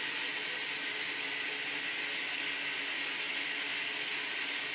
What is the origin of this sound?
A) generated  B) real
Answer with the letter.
B